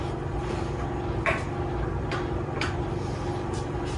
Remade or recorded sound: recorded